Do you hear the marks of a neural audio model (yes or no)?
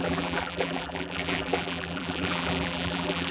yes